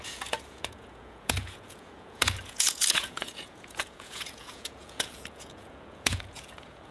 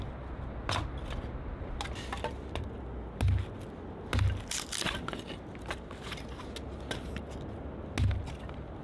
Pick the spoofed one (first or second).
first